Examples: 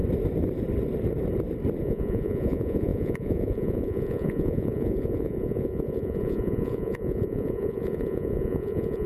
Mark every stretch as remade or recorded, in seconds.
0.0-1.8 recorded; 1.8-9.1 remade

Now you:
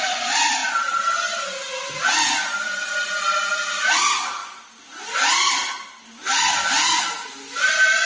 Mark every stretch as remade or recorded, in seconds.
0.0-8.0 recorded